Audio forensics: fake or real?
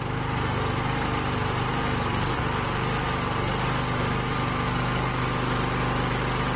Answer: real